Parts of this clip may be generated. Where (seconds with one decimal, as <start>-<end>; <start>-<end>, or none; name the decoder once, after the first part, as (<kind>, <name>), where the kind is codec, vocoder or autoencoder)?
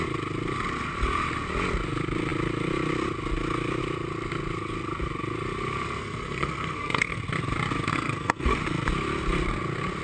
6.0-7.2 (codec, SNAC); 7.9-8.6